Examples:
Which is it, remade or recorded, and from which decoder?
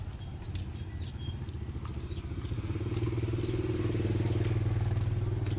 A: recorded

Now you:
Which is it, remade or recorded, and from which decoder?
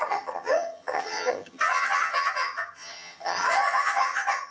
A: remade, vocoder, HiFi-GAN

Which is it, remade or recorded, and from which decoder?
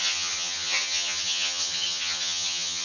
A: remade, vocoder, HiFi-GAN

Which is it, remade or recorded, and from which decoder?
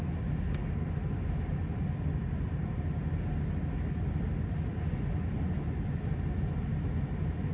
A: recorded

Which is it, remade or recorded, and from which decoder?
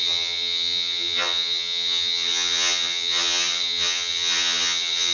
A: remade, vocoder, HiFi-GAN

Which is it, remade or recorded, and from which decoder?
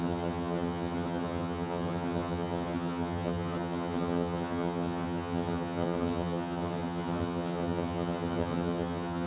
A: remade, vocoder, HiFi-GAN